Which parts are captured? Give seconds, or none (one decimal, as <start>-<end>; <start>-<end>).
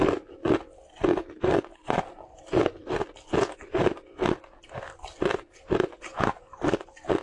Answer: 0.0-1.7; 2.9-6.1; 6.6-7.2